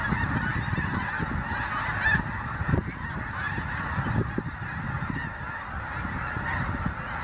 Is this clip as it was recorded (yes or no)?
yes